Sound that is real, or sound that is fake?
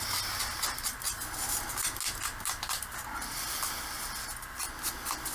real